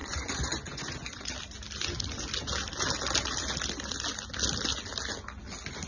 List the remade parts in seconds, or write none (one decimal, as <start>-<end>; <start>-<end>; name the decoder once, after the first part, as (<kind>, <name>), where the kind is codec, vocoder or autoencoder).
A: 0.0-1.3 (vocoder, Vocos)